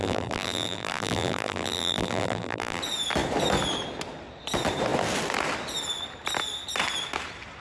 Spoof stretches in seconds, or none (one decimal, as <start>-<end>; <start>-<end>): 0.0-2.8